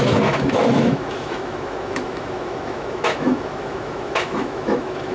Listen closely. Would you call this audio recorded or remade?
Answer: remade